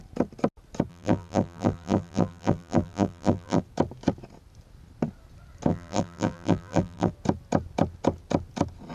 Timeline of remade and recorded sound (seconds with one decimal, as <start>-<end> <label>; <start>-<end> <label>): 0.0-0.9 recorded; 0.9-3.6 remade; 3.6-5.7 recorded; 5.7-7.1 remade; 7.1-8.9 recorded